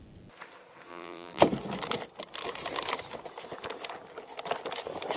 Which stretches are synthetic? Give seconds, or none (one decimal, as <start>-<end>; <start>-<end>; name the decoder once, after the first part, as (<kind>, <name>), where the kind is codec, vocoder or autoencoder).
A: 0.9-1.4 (vocoder, BigVGAN v2)

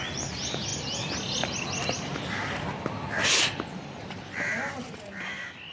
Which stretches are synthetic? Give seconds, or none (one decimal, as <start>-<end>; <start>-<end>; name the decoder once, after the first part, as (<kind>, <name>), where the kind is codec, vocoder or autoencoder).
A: 0.0-0.7 (vocoder, BigVGAN v2); 3.4-4.5